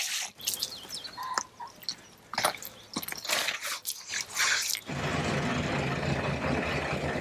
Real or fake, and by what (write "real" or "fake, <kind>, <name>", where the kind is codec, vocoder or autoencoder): real